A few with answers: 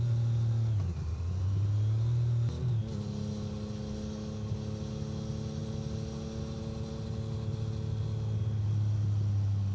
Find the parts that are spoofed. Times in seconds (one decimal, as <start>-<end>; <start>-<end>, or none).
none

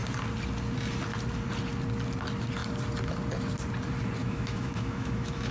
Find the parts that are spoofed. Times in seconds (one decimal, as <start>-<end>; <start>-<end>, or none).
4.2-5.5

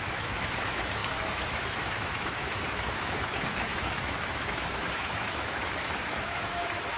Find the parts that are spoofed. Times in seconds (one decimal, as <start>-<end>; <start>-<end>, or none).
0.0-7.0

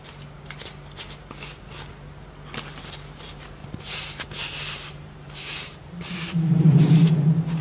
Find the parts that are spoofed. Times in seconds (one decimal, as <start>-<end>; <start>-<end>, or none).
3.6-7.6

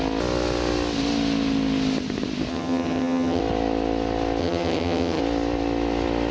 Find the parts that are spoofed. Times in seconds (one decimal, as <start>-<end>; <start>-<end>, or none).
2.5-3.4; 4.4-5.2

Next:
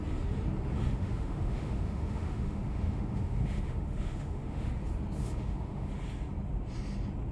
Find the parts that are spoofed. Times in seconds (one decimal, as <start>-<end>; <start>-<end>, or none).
0.9-4.7; 5.2-5.9

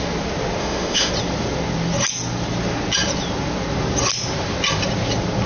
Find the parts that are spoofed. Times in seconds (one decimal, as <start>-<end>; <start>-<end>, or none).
0.6-1.1